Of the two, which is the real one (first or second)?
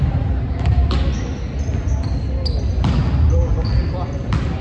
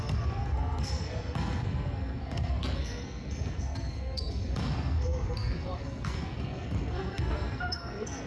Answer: first